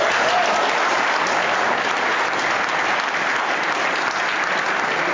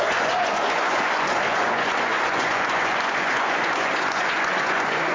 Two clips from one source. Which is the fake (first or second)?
second